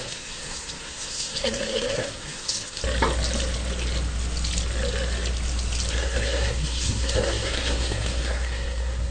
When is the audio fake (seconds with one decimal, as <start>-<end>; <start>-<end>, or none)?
0.0-2.8; 5.9-9.1